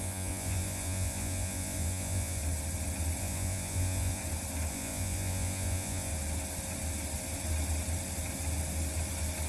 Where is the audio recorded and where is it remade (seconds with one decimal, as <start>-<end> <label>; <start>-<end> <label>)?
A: 0.0-2.4 remade; 2.4-3.2 recorded; 3.2-4.2 remade; 4.2-4.7 recorded; 4.7-6.1 remade; 6.1-9.5 recorded